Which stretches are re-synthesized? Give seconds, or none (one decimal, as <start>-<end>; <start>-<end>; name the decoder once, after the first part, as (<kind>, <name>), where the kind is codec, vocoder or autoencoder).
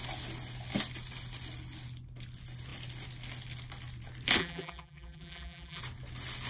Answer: 4.4-5.8 (vocoder, BigVGAN v2)